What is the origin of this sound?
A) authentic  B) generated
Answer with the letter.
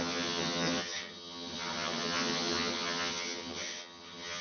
B